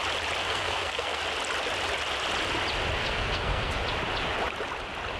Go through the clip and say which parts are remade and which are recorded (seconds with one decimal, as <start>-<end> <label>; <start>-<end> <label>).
0.0-0.4 recorded; 0.4-1.2 remade; 1.2-3.0 recorded; 3.0-3.8 remade; 3.8-5.2 recorded